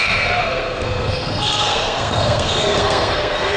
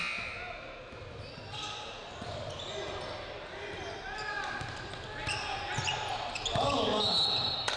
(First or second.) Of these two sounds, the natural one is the second